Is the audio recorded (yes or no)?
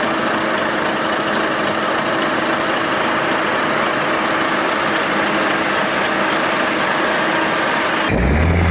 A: yes